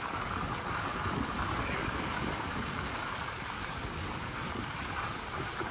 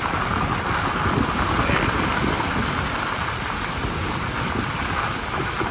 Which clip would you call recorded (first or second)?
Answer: second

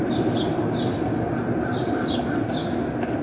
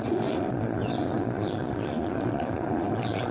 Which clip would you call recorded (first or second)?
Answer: first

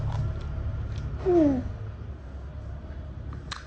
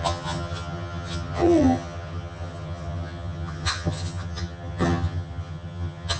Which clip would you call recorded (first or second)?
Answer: first